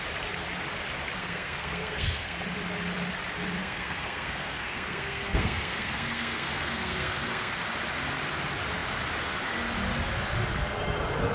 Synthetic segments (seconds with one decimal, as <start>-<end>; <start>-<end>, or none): 1.2-2.4; 3.6-7.6